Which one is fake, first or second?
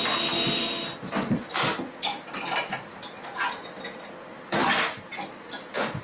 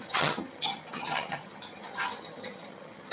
second